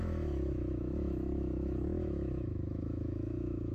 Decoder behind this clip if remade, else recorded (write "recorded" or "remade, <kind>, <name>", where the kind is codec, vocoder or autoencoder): remade, autoencoder, DAC-VAE